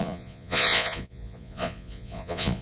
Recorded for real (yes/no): no